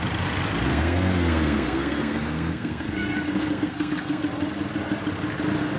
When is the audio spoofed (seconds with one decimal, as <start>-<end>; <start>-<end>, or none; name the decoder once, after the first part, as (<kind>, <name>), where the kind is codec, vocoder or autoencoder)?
0.7-4.2 (codec, SNAC)

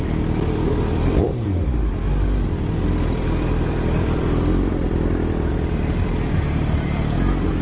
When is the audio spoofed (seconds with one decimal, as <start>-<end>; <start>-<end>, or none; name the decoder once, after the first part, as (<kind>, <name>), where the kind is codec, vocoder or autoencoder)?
0.0-7.6 (vocoder, BigVGAN v2)

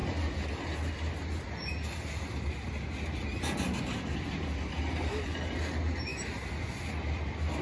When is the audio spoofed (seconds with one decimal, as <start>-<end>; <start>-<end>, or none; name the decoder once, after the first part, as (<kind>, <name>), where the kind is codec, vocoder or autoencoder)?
none

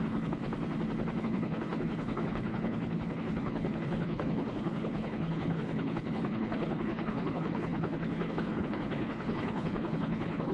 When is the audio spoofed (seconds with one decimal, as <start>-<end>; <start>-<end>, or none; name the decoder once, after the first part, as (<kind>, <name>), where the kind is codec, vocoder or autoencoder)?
0.0-0.4 (codec, HILCodec); 1.2-10.5

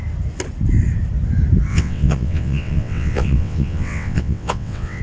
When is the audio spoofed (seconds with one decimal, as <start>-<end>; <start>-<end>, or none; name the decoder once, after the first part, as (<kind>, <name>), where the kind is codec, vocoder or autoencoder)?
1.7-5.0 (vocoder, WaveNeXt)

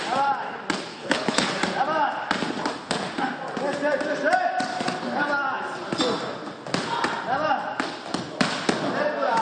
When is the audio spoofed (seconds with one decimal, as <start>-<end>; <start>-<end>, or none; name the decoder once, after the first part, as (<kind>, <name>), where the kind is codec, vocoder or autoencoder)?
0.9-1.5 (codec, HILCodec)

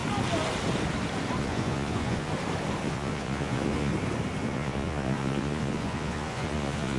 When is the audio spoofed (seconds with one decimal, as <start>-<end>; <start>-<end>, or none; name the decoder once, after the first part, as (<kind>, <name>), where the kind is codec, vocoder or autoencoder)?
1.4-2.3 (vocoder, Vocos); 2.8-3.9; 4.4-7.0